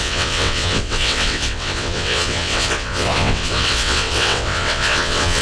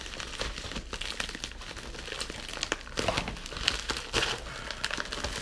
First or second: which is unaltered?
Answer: second